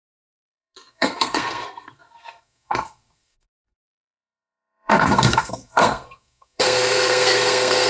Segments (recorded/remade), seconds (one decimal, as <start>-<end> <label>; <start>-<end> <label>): 0.0-7.9 remade